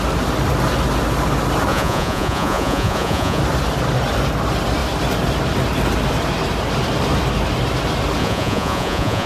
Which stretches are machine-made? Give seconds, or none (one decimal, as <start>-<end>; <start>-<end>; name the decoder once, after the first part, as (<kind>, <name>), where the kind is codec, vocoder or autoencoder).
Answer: 1.7-3.4 (vocoder, Vocos); 8.2-9.3